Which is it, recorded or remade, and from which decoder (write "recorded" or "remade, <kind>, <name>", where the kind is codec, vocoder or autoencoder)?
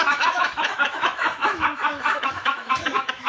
remade, autoencoder, DAC-VAE